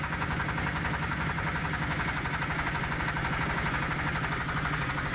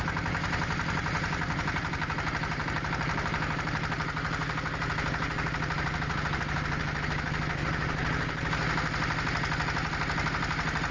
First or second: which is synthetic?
first